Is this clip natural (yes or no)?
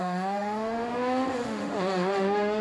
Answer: no